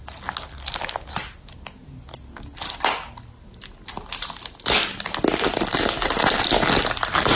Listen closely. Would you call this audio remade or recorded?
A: recorded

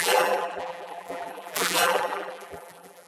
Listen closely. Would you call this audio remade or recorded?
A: remade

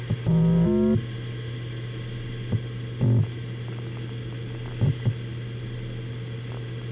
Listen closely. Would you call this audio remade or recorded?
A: recorded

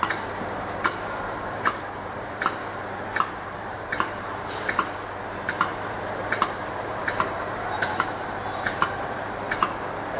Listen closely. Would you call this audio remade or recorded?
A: remade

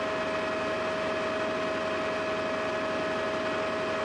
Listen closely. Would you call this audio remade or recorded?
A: recorded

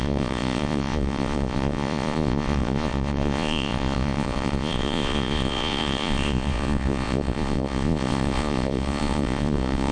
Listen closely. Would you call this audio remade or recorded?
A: remade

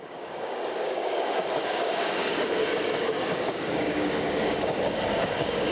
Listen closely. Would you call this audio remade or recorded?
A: remade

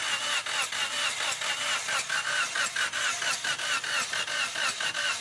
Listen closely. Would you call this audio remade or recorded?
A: recorded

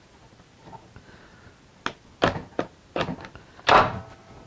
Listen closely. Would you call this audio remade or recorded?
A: recorded